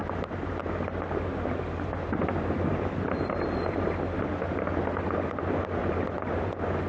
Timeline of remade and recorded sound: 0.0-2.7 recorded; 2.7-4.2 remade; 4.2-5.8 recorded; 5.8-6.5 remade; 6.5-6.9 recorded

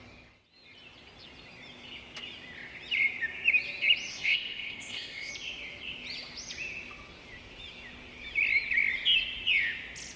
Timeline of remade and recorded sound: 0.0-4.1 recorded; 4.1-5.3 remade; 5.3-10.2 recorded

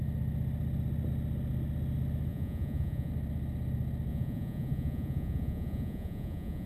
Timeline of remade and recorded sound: 0.0-2.3 recorded; 2.3-3.1 remade; 3.1-4.1 recorded; 4.1-6.7 remade

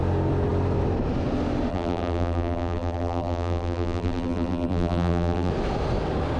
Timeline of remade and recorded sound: 0.0-1.7 recorded; 1.7-5.5 remade; 5.5-6.4 recorded